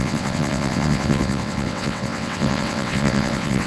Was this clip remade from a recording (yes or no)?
yes